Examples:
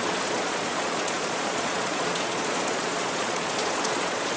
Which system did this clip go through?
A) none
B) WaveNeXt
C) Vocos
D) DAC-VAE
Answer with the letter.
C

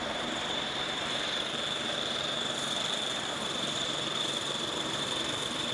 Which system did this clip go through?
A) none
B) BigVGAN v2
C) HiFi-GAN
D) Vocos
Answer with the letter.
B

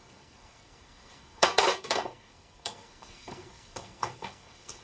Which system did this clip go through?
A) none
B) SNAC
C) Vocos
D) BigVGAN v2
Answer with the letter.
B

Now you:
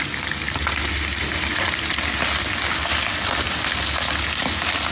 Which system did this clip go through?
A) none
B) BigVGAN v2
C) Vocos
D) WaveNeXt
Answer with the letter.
A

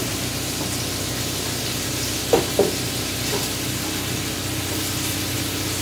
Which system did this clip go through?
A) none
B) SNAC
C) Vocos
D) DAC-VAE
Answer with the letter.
A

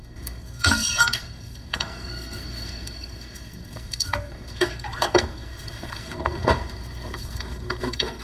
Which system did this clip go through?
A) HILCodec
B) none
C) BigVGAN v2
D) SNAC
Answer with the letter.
D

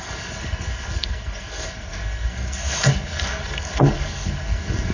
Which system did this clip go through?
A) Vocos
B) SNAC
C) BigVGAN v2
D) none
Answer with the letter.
B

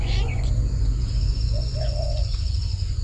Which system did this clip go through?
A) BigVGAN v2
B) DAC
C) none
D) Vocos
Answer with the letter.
D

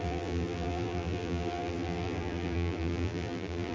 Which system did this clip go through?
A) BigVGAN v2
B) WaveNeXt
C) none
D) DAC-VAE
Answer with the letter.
A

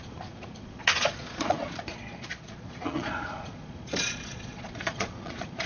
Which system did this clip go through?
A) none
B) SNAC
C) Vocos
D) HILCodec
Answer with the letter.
C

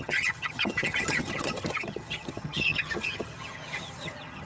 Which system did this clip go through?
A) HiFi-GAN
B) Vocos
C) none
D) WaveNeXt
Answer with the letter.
A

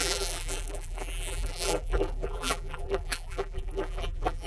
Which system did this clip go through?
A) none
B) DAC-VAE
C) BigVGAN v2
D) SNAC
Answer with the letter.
C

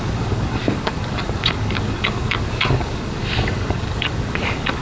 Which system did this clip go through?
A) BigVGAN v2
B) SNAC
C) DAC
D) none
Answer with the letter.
C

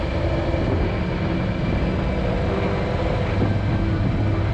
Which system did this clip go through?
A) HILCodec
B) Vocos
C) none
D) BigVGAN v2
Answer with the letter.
C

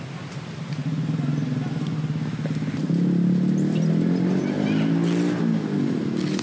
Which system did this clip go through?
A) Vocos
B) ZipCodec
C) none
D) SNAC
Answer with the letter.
C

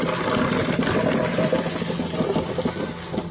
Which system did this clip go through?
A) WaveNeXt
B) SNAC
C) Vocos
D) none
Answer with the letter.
D